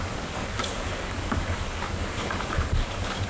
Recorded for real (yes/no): no